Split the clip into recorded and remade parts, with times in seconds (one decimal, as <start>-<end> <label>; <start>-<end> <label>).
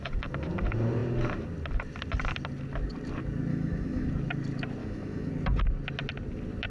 0.0-3.5 recorded; 3.5-4.1 remade; 4.1-4.8 recorded; 4.8-5.3 remade; 5.3-6.7 recorded